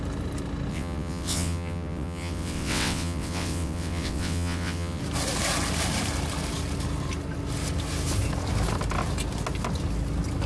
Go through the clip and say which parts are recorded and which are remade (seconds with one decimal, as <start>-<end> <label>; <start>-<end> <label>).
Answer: 0.0-0.7 recorded; 0.7-5.0 remade; 5.0-10.5 recorded